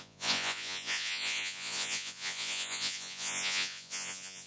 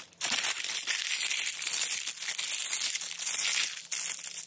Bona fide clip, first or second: second